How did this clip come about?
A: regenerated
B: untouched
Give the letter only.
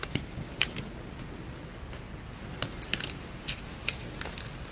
B